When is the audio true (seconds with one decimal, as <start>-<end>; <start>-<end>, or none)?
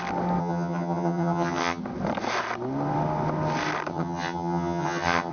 0.0-0.4; 1.8-3.9